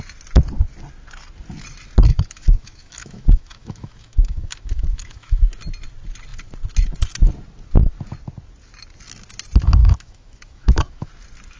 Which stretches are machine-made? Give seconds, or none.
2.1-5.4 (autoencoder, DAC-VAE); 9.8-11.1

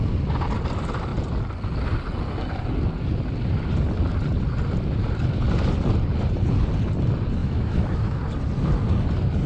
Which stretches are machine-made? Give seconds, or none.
7.4-8.2 (autoencoder, DAC-VAE)

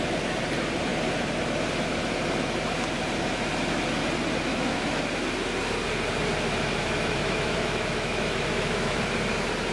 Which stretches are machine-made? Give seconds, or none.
4.5-5.0 (autoencoder, DAC-VAE); 6.8-9.0